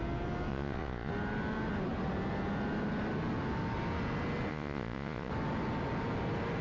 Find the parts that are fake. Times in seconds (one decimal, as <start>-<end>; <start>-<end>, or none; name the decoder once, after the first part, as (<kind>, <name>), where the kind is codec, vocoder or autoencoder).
0.5-1.1 (vocoder, Vocos); 4.5-5.3